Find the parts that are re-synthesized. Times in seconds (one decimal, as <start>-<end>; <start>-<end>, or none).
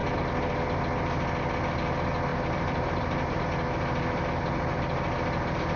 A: 2.3-3.4